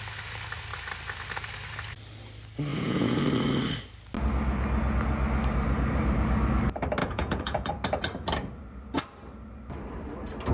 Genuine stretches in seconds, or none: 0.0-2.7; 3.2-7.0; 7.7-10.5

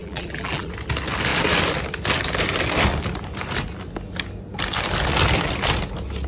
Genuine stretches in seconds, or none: 0.7-6.3